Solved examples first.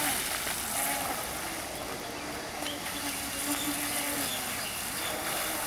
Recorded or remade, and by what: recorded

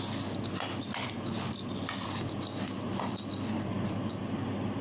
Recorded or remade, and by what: recorded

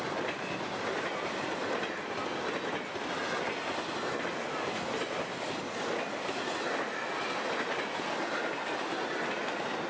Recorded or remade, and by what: recorded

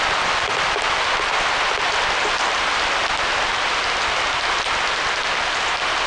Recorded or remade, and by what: recorded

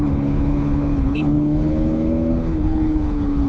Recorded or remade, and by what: remade, codec, HILCodec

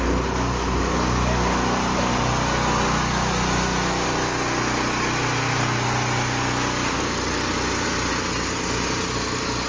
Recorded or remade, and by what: recorded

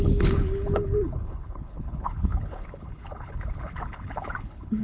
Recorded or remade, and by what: remade, codec, HILCodec